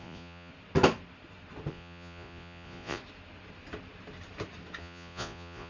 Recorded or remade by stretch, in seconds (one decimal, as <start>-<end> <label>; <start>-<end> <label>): 0.0-0.5 remade; 0.5-1.7 recorded; 1.7-3.0 remade; 3.0-4.8 recorded; 4.8-5.7 remade